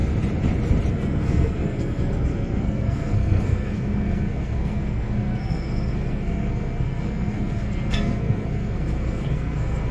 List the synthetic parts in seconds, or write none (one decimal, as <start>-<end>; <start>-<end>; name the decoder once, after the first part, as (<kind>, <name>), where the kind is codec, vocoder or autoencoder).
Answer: 0.9-9.9 (codec, SNAC)